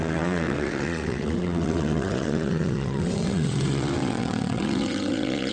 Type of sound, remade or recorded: remade